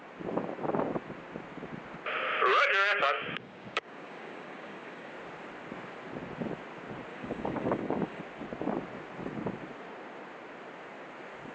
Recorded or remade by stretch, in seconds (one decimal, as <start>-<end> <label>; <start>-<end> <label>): 0.0-2.5 recorded; 2.5-5.1 remade; 5.1-7.1 recorded; 7.1-8.2 remade; 8.2-11.5 recorded